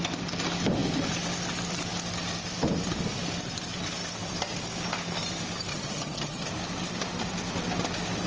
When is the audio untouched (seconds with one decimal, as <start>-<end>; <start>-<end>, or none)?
0.0-5.7; 6.5-8.3